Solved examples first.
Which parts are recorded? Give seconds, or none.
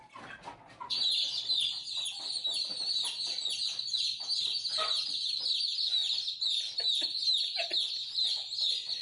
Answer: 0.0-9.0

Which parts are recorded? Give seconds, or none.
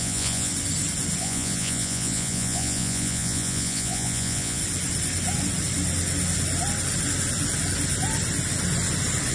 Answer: 0.5-1.2; 4.6-9.3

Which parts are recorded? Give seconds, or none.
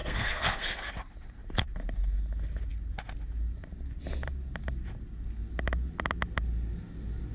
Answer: 0.9-7.3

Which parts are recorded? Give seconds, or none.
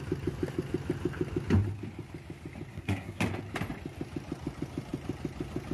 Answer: 0.0-2.7; 3.2-5.7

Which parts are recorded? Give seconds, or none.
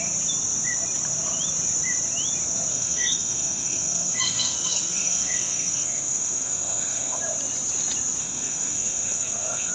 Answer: 0.0-2.7; 7.2-8.2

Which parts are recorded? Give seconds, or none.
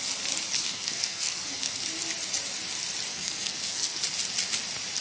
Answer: 0.0-0.6; 1.8-3.1; 4.0-5.0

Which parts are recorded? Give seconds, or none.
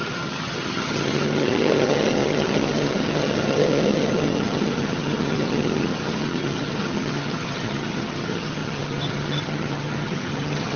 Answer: none